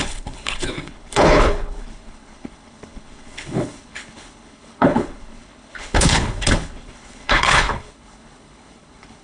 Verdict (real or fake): fake